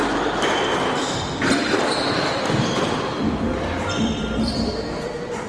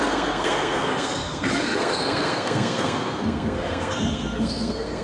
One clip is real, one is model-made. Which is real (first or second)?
first